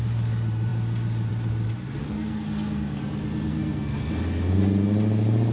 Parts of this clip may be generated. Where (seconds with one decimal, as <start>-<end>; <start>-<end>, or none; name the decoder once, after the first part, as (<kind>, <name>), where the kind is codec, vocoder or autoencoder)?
2.0-3.0 (codec, SNAC); 3.5-4.1